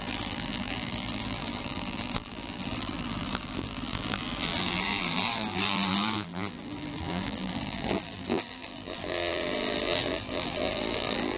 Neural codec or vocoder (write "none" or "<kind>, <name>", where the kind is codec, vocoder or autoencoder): vocoder, BigVGAN v2